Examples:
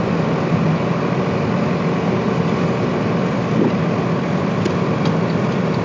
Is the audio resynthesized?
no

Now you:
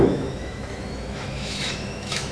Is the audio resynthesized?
yes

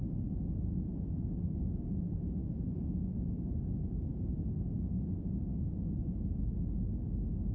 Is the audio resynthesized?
no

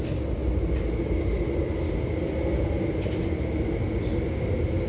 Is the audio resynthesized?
no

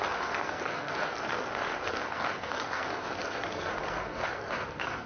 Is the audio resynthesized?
yes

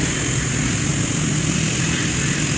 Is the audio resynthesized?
no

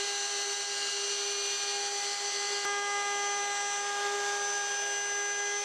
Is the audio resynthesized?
no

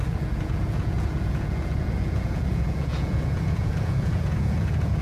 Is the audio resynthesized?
yes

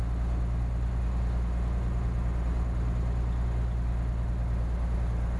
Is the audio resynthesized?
no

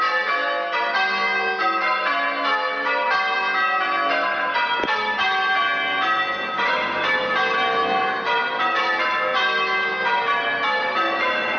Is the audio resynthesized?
no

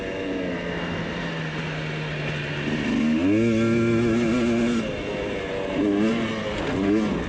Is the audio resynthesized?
no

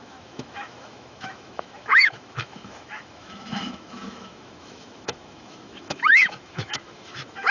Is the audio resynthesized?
yes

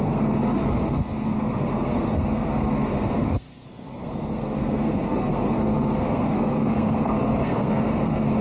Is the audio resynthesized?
yes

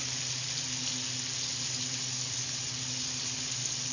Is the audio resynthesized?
no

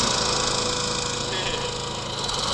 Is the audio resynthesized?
no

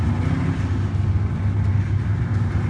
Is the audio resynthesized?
no